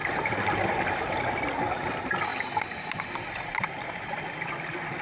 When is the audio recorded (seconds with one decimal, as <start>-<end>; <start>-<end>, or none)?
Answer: 1.1-2.3; 4.2-5.0